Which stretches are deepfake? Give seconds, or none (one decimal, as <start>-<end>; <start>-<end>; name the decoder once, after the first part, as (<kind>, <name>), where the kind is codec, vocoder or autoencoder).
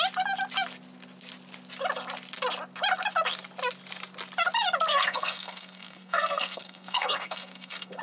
4.9-8.0 (codec, SNAC)